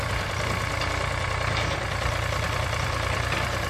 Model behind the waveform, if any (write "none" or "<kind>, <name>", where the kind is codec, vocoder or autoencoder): none